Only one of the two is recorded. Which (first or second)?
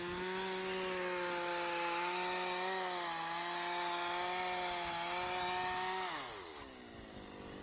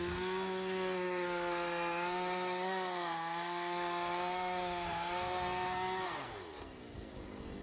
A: first